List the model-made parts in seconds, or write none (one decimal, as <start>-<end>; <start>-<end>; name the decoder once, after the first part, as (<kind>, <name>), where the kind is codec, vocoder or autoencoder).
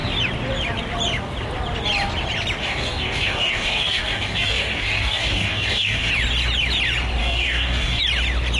2.6-6.1 (codec, DAC); 7.2-8.0